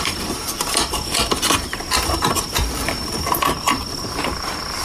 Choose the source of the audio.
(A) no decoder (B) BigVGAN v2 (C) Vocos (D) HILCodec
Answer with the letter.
B